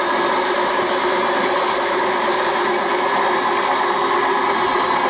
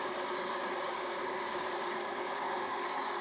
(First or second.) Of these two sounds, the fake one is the second